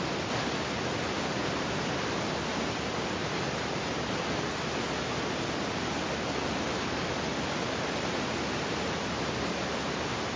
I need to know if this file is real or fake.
real